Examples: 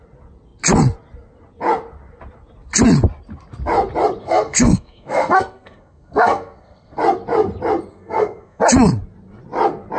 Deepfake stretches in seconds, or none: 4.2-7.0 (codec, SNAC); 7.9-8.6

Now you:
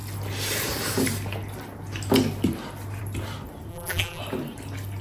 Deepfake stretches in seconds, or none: 3.7-4.2 (vocoder, BigVGAN v2)

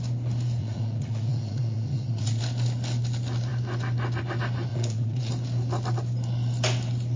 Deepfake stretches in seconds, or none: 0.6-2.4 (vocoder, Vocos); 4.7-5.3

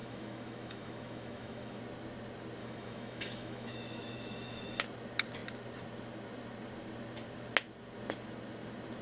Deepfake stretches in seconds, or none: 0.0-1.8 (autoencoder, DAC-VAE); 2.6-4.8

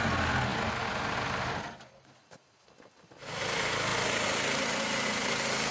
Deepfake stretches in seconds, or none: none

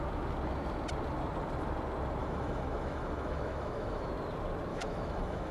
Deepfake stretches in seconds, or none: 2.2-4.1 (autoencoder, DAC-VAE); 4.7-5.5